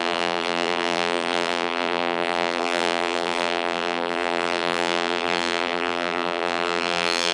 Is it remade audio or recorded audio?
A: remade